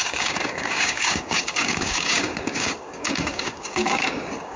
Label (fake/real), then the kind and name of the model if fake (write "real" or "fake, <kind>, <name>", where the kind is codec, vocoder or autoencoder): fake, codec, DAC